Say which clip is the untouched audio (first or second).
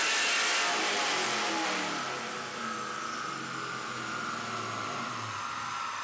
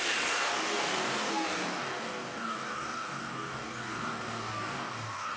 first